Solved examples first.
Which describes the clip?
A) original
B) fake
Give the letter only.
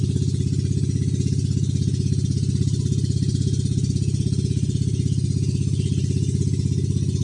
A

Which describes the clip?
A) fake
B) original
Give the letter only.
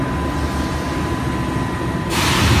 B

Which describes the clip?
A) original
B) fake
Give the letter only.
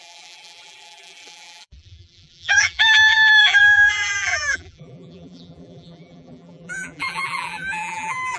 B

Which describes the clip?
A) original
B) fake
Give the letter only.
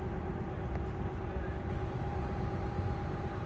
A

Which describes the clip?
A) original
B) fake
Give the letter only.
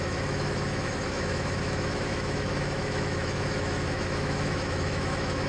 B